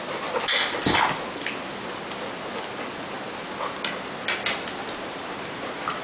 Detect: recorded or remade recorded